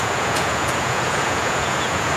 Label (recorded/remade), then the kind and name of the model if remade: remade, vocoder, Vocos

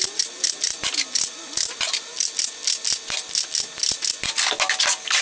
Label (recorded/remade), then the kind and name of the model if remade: recorded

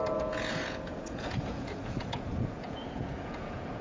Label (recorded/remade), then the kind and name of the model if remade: remade, vocoder, Vocos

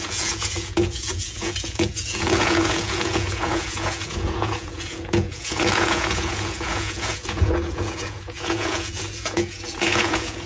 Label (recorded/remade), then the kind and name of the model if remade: remade, vocoder, Vocos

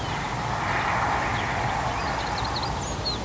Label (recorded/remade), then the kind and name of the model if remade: recorded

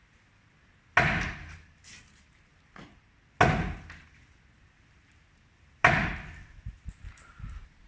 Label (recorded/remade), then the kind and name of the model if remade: recorded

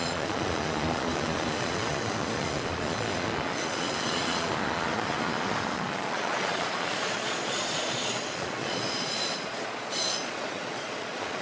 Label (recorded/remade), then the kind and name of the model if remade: remade, vocoder, Vocos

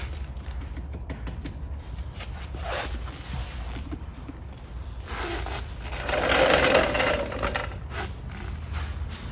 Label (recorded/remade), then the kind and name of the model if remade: recorded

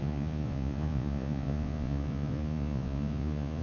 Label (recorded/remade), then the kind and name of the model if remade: remade, vocoder, Vocos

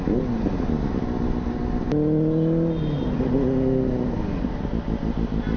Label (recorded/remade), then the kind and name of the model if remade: recorded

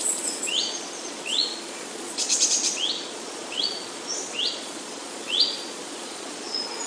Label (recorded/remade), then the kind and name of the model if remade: remade, vocoder, Vocos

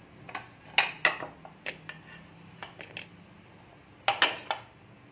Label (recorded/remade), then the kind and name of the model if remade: recorded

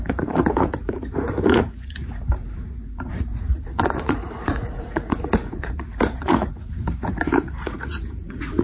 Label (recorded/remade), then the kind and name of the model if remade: remade, vocoder, Vocos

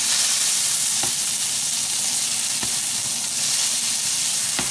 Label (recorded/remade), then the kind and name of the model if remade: recorded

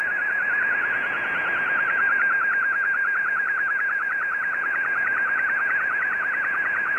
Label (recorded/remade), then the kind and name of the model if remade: remade, vocoder, Vocos